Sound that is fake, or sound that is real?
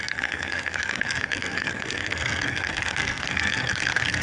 fake